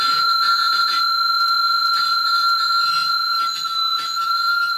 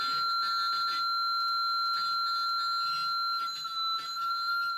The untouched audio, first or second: second